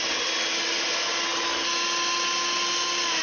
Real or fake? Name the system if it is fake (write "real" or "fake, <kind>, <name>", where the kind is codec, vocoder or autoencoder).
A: real